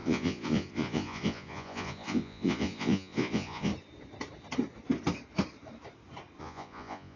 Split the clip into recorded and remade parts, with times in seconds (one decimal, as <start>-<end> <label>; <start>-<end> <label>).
0.0-3.7 remade; 3.7-6.4 recorded; 6.4-7.2 remade